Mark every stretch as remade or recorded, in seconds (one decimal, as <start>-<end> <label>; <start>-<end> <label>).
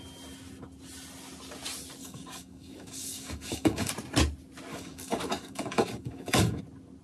0.0-2.0 recorded; 2.0-3.9 remade; 3.9-4.7 recorded; 4.7-6.6 remade; 6.6-7.0 recorded